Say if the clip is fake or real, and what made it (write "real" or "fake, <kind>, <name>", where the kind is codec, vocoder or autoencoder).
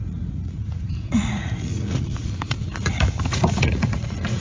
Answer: fake, vocoder, Vocos